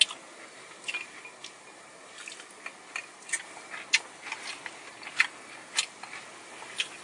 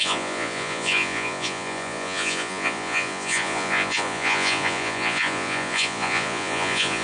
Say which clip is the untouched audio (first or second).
first